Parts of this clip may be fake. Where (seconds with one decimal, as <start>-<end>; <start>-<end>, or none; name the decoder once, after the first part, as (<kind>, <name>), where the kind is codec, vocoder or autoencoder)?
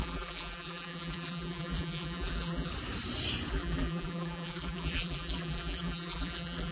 0.0-2.7 (vocoder, BigVGAN v2); 3.5-6.7